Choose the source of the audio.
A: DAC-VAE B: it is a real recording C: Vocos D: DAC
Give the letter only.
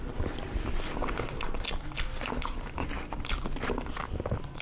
B